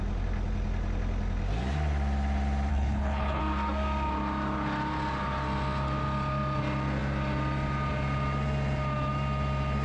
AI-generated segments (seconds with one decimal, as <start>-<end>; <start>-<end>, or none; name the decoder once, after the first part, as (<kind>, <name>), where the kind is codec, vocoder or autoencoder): 2.7-3.4 (codec, HILCodec)